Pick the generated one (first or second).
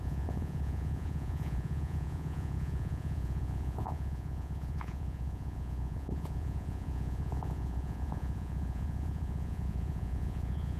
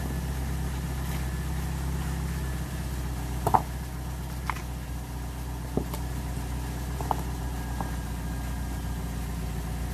first